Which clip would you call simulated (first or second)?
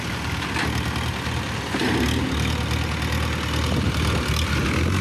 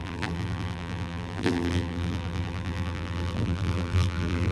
second